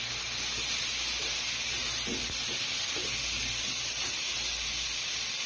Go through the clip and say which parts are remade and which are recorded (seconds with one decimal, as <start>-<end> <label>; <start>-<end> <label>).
0.0-5.5 recorded